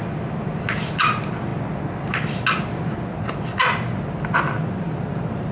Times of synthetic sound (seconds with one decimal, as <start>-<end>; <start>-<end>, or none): none